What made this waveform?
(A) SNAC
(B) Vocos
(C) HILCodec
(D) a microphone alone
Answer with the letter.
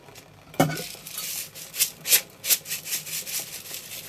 D